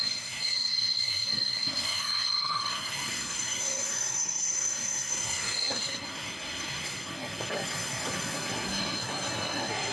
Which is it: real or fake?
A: fake